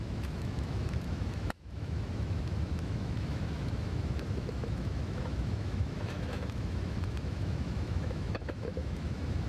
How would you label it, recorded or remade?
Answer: remade